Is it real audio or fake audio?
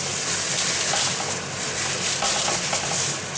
real